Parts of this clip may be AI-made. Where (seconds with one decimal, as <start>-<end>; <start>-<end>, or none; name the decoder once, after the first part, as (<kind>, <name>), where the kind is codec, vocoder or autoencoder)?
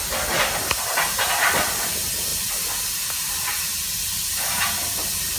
none